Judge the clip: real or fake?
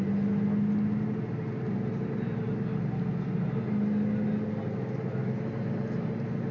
real